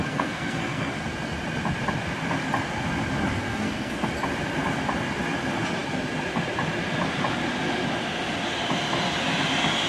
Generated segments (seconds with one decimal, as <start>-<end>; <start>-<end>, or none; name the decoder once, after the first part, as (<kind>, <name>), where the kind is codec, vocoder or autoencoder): 0.0-0.9 (codec, SNAC); 3.5-4.1